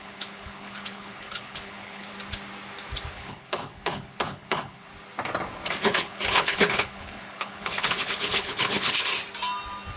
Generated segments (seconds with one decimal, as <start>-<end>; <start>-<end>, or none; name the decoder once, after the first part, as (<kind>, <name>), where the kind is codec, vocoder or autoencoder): 0.0-2.1 (codec, HILCodec); 3.1-4.9; 5.8-9.1

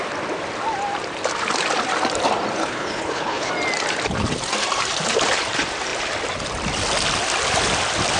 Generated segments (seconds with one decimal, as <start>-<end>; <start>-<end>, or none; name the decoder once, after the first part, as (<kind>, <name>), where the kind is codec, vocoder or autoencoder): 2.6-3.5 (codec, HILCodec)

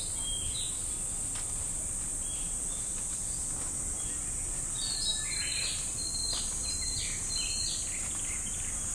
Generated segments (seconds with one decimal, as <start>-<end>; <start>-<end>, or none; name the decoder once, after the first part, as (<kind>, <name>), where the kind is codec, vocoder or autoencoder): none

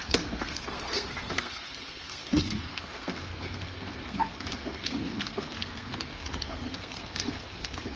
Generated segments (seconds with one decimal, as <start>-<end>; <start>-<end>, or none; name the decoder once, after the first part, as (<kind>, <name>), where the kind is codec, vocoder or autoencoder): 0.0-8.0 (codec, SNAC)

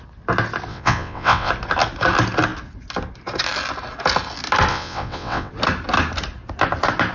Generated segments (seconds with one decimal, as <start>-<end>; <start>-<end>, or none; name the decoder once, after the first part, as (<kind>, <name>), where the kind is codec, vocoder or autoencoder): 0.7-1.5 (vocoder, WaveNeXt); 4.7-5.5

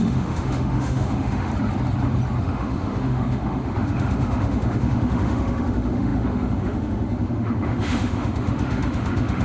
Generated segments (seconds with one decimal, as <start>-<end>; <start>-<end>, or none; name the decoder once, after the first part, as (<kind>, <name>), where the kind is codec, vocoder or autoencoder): 0.0-1.5 (autoencoder, DAC-VAE); 2.4-9.4

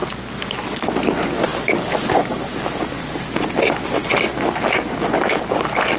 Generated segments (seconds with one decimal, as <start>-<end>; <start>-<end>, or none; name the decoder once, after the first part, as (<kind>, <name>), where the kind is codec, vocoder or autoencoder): none

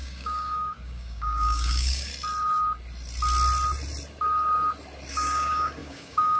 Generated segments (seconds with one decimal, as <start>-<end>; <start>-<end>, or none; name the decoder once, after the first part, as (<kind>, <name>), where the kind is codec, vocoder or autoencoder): 0.0-2.1 (codec, DAC); 5.1-6.4